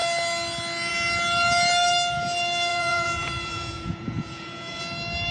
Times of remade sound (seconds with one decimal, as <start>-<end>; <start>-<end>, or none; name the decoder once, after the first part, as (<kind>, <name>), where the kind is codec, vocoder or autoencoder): 2.7-4.8 (vocoder, Vocos)

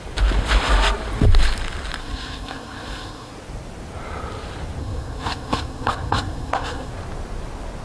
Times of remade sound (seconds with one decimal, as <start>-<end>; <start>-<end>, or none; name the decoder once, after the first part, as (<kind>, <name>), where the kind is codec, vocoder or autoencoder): 2.0-3.3 (codec, SNAC); 4.8-6.9

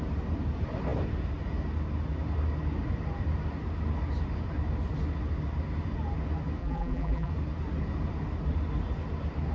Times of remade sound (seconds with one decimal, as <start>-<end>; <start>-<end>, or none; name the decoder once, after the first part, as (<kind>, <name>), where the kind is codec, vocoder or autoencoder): 6.6-7.3 (vocoder, BigVGAN v2)